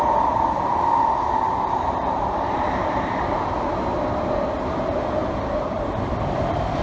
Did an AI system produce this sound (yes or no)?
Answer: no